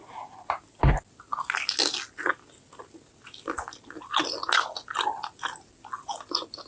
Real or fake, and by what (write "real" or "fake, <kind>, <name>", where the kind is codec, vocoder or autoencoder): real